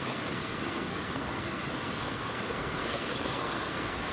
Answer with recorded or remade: remade